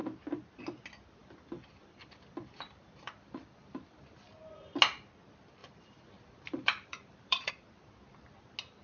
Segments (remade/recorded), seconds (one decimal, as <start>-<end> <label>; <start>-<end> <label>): 0.0-1.2 recorded; 1.2-4.3 remade; 4.3-5.6 recorded; 5.6-7.5 remade; 7.5-8.8 recorded